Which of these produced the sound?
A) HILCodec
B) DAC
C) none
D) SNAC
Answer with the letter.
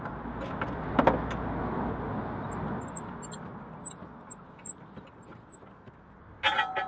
C